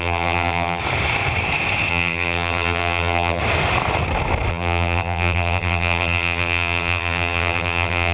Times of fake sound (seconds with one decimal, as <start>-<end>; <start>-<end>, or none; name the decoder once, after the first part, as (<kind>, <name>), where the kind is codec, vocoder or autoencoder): 0.0-0.8 (vocoder, BigVGAN v2); 1.9-3.4; 4.5-8.1